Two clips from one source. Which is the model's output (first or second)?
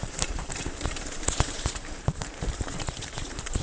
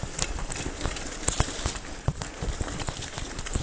first